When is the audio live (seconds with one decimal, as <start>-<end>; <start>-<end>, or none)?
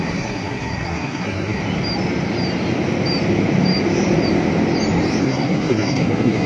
1.6-5.2